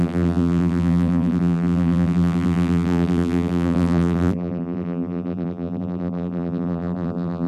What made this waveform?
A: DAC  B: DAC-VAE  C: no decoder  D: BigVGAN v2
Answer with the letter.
D